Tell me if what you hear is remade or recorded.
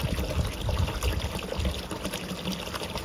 recorded